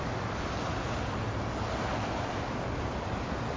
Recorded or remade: recorded